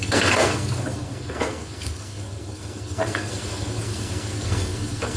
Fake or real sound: fake